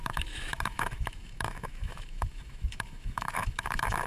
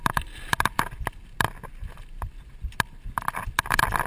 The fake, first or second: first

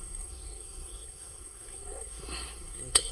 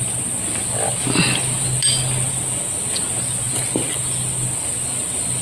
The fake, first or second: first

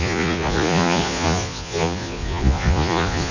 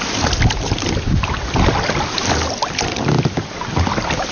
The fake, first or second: first